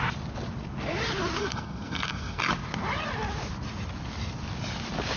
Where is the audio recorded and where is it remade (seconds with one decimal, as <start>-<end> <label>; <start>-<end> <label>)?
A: 0.0-1.4 recorded; 1.4-2.4 remade; 2.4-5.2 recorded